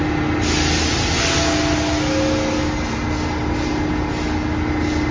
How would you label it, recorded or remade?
recorded